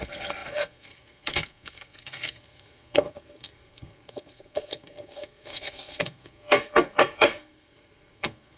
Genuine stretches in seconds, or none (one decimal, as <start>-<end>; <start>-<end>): none